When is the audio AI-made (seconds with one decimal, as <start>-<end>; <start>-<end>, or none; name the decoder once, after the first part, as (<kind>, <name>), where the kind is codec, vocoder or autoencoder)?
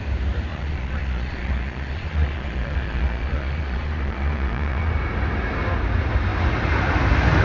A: 0.5-4.9 (vocoder, Vocos)